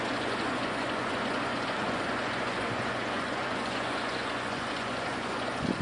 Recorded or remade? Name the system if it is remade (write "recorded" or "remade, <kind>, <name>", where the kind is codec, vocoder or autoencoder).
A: remade, vocoder, Vocos